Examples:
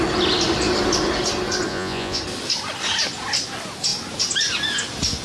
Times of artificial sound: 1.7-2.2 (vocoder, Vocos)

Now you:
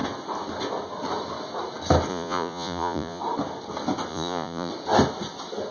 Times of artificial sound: 2.1-3.2 (vocoder, Vocos); 4.1-4.7